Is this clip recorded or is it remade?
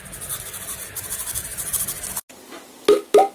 recorded